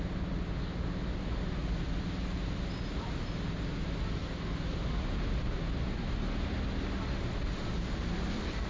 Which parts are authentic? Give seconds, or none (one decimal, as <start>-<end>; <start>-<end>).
0.0-8.7